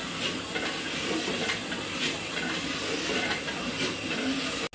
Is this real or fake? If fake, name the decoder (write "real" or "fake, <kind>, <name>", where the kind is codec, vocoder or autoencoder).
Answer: real